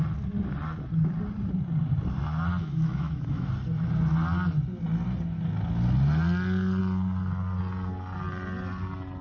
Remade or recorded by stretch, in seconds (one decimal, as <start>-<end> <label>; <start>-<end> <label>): 0.0-2.6 recorded; 2.6-3.5 remade; 3.5-9.2 recorded